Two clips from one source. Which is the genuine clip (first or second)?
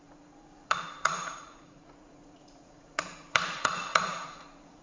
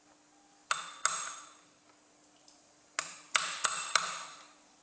second